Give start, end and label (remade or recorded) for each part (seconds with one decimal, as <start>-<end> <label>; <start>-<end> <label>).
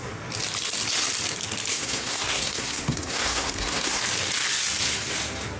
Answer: 0.0-1.7 recorded; 1.7-4.0 remade; 4.0-5.6 recorded